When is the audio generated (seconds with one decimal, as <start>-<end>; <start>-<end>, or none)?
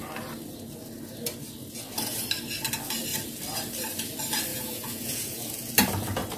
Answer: 4.5-5.7